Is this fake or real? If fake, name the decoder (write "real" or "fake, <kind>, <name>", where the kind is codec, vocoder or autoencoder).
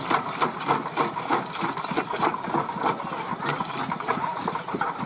fake, vocoder, BigVGAN v2